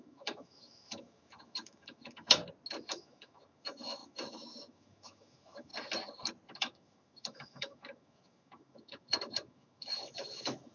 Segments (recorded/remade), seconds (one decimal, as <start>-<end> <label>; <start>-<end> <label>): 0.0-2.4 remade; 2.4-2.9 recorded; 2.9-5.7 remade; 5.7-6.5 recorded; 6.5-10.7 remade